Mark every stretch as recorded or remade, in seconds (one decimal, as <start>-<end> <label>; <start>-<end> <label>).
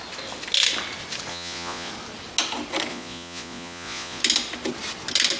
0.0-1.3 recorded; 1.3-1.9 remade; 1.9-2.9 recorded; 2.9-4.2 remade; 4.2-5.4 recorded